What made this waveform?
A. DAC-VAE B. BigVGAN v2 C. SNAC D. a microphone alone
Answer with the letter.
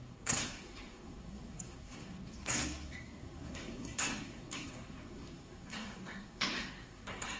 C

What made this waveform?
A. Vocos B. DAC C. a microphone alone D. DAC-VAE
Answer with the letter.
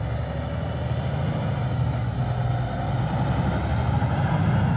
C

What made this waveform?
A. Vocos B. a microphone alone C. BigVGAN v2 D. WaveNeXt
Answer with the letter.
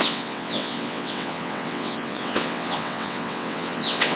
D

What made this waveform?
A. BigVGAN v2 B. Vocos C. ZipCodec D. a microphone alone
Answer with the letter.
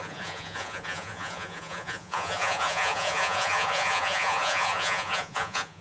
B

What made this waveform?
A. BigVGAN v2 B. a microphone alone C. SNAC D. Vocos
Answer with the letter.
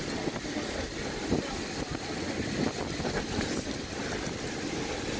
B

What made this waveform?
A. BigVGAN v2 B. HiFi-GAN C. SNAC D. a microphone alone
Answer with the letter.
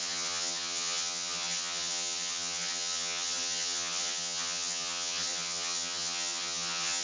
B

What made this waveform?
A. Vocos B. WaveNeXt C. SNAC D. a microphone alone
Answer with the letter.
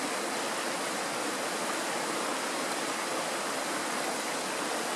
D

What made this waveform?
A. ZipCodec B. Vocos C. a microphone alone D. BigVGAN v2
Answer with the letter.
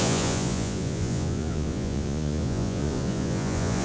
B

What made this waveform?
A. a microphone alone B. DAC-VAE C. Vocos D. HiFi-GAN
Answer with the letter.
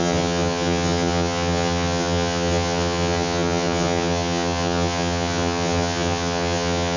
D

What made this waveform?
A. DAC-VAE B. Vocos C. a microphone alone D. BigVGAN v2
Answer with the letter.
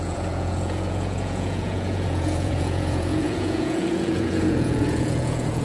B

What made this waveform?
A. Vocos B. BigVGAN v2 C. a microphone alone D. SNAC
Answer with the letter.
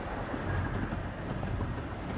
C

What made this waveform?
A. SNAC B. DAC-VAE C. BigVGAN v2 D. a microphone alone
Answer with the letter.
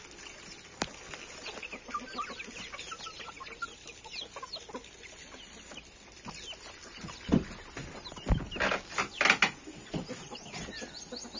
D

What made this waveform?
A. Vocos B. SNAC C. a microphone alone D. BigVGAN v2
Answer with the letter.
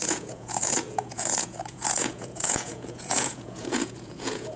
A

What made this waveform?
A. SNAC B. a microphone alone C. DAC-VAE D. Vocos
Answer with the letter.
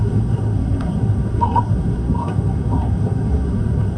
A